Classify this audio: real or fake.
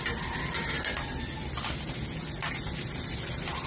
real